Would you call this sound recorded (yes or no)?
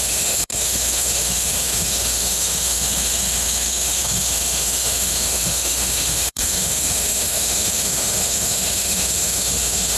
no